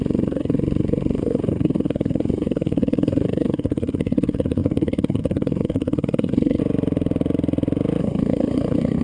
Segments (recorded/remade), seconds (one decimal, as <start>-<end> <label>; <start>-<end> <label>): 0.0-6.6 remade; 6.6-8.0 recorded; 8.0-9.0 remade